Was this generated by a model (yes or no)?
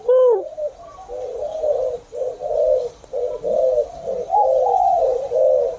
no